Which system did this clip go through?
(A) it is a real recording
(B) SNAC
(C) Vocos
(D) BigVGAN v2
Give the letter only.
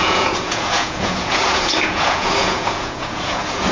C